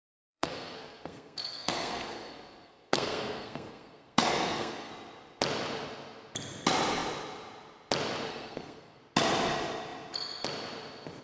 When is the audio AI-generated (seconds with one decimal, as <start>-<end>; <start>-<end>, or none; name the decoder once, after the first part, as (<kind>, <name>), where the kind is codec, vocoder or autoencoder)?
0.0-4.9 (codec, SNAC); 8.3-9.0

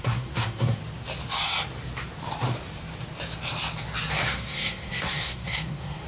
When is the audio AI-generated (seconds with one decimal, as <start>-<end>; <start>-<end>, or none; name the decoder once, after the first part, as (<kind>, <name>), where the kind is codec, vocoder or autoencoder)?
0.0-0.8 (codec, SNAC); 4.1-6.1

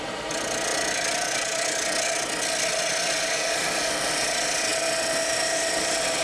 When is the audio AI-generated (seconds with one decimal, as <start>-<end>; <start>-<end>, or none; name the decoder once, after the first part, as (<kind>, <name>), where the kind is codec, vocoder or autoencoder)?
none

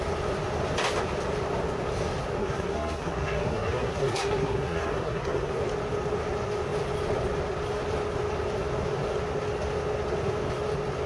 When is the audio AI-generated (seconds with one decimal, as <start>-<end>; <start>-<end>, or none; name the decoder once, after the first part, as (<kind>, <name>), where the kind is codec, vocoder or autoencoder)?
2.4-5.5 (codec, SNAC)

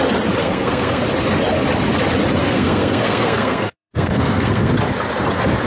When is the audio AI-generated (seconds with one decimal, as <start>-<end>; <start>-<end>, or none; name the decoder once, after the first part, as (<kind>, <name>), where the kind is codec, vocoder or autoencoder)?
0.4-1.0 (codec, SNAC); 2.4-4.7

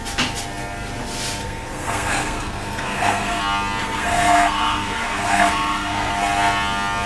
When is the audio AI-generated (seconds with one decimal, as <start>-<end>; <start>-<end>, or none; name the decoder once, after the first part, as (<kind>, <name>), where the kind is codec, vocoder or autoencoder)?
1.4-3.4 (codec, SNAC); 3.8-6.1